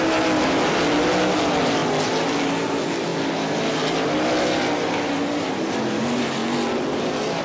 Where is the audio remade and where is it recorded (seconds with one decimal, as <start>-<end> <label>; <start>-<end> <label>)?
0.0-7.4 recorded